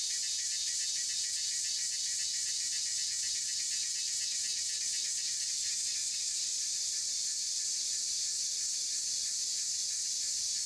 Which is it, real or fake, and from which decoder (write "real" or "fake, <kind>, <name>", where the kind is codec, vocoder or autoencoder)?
real